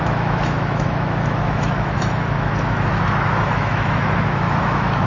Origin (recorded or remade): remade